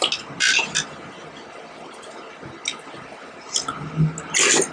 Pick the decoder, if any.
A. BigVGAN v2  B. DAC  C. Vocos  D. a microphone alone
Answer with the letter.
D